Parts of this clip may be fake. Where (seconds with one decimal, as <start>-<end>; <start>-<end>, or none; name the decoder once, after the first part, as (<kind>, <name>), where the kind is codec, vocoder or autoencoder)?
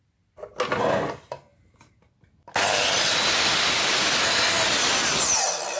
none